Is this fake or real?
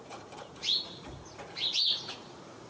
fake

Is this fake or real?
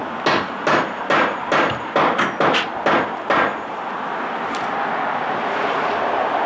real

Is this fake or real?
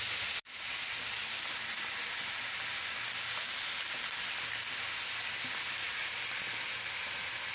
real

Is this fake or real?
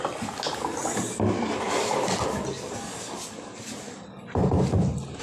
real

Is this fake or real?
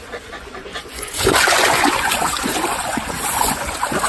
fake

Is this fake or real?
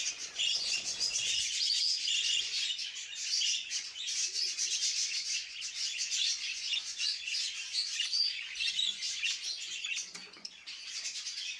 fake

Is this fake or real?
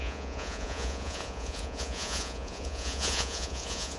fake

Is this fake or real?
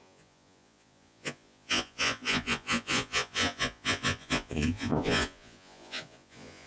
fake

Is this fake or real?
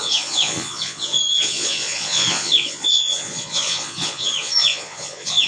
fake